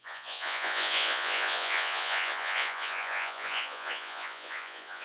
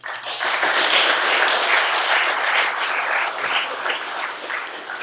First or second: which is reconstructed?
first